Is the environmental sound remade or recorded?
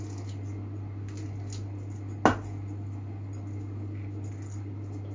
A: recorded